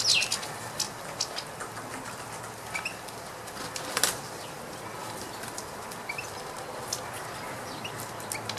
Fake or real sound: real